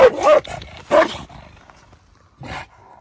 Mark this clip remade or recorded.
recorded